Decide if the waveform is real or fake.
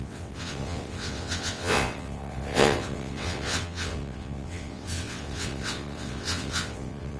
fake